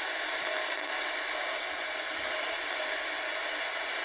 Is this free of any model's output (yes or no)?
yes